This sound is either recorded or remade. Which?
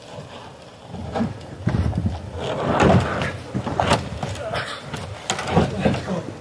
recorded